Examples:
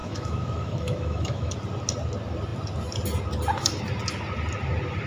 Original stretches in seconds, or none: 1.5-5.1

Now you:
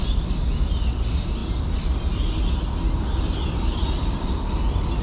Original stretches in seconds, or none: 0.0-5.0

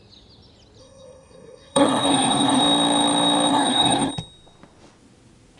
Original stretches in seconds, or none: 0.0-0.8; 2.6-3.5; 4.1-5.6

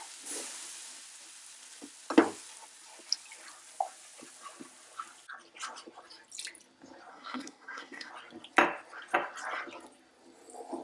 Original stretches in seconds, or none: 0.0-7.1; 8.1-10.8

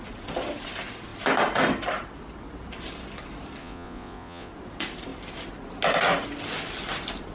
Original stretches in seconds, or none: 0.0-3.6; 4.5-7.3

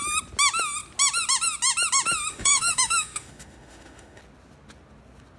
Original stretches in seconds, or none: 0.0-2.3; 4.2-5.4

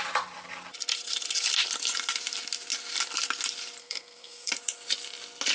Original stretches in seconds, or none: 0.0-3.8; 4.5-5.5